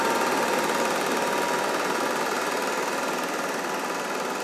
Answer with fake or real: real